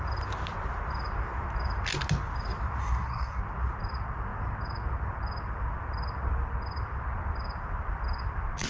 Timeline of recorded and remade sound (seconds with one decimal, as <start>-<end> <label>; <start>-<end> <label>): 0.0-2.8 recorded; 2.8-3.4 remade; 3.4-8.7 recorded